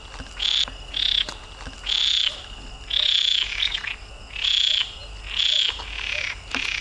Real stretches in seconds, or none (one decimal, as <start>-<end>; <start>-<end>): 0.0-6.8